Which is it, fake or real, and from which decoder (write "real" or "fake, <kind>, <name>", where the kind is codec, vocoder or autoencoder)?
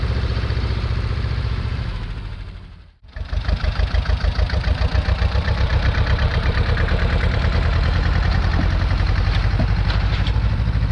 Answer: fake, vocoder, BigVGAN v2